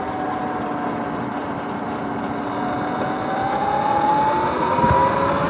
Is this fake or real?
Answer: real